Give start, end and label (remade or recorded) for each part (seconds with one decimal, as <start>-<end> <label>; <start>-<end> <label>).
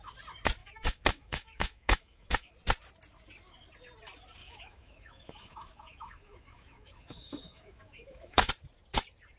0.0-0.6 recorded; 0.6-2.5 remade; 2.5-4.4 recorded; 4.4-8.5 remade; 8.5-9.4 recorded